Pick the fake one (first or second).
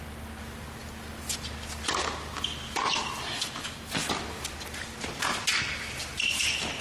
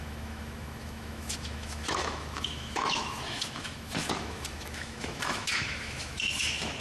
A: second